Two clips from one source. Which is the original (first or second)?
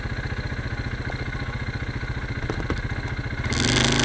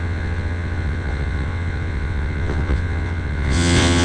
first